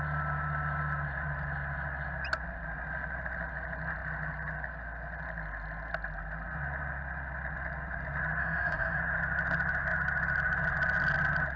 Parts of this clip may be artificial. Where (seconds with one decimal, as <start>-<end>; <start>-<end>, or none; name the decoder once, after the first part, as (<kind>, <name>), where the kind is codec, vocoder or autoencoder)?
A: 8.4-9.0 (autoencoder, DAC-VAE)